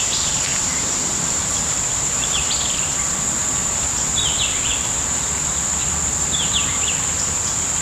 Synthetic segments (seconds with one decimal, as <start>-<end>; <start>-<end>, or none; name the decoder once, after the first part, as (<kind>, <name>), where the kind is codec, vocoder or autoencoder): 0.5-2.5 (vocoder, BigVGAN v2); 3.6-5.8